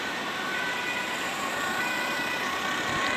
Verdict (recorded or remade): remade